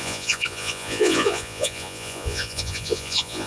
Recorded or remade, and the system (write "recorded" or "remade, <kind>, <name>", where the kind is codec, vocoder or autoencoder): remade, vocoder, Vocos